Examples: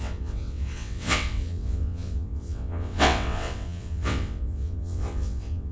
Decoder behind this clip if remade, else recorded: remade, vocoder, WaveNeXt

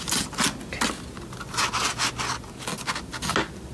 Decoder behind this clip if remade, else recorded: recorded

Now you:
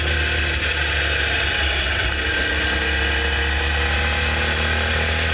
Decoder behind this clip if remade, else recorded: recorded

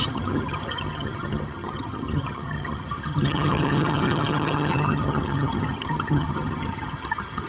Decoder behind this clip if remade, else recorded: remade, vocoder, HiFi-GAN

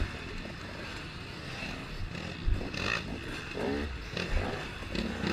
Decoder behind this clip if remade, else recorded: recorded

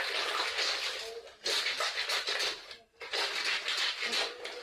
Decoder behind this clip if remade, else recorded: recorded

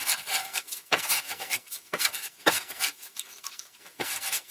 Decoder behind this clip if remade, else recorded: remade, codec, SNAC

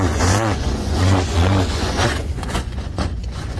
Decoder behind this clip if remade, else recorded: remade, vocoder, Vocos